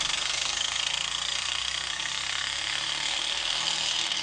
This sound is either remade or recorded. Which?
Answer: remade